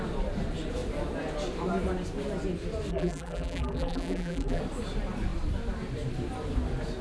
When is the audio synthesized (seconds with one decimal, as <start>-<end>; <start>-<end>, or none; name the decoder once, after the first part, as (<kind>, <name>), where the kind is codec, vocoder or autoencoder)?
2.9-4.6 (vocoder, BigVGAN v2)